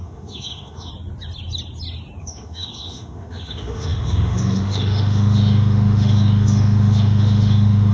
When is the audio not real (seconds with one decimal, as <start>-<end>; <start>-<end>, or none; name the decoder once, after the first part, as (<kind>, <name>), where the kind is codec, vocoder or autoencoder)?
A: 0.0-0.9 (autoencoder, DAC-VAE); 2.2-7.9

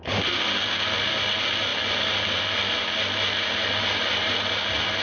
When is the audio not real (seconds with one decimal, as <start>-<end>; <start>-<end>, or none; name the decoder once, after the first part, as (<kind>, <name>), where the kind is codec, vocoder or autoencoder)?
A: none

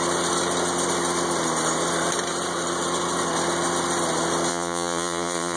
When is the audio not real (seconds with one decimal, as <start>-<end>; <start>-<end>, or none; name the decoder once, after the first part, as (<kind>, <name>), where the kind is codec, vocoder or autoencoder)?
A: 4.5-5.6 (vocoder, WaveNeXt)

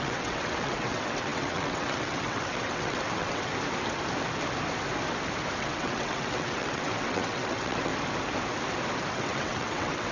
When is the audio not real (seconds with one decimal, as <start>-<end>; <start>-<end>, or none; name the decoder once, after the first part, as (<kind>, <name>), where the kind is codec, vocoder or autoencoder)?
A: 0.0-3.5 (vocoder, WaveNeXt); 5.6-7.9; 9.1-10.1